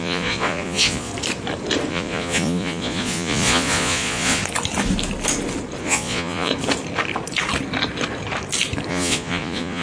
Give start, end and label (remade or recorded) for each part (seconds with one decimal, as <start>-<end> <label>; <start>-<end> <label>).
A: 0.0-1.1 remade; 1.1-1.9 recorded; 1.9-4.4 remade; 4.4-5.8 recorded; 5.8-6.5 remade; 6.5-8.9 recorded; 8.9-9.8 remade